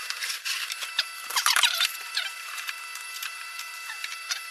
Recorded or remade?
remade